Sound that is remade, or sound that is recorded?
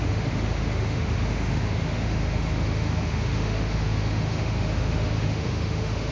remade